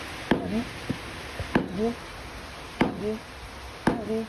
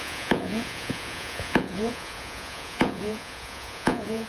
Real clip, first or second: first